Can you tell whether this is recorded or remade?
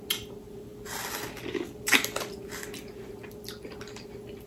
recorded